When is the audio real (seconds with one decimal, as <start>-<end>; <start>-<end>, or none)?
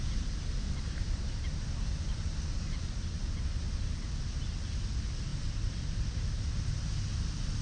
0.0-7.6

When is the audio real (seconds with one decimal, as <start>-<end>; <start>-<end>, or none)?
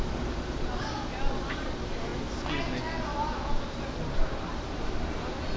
0.0-5.6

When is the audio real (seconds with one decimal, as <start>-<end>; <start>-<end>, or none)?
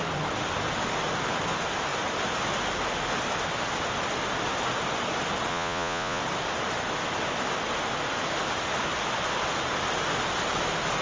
0.0-5.5; 6.2-11.0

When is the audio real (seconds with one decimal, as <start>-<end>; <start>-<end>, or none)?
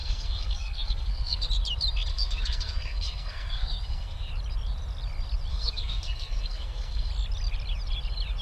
1.5-2.1; 4.3-5.5; 7.1-8.4